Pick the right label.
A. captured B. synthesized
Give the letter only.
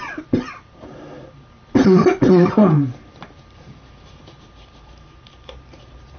B